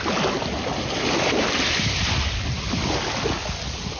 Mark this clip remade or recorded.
recorded